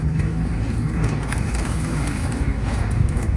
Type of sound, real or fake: fake